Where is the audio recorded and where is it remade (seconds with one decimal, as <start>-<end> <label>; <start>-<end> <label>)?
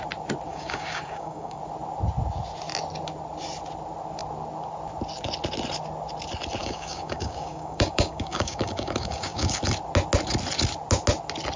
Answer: 0.0-0.5 recorded; 0.5-1.6 remade; 1.6-6.6 recorded; 6.6-9.6 remade; 9.6-11.6 recorded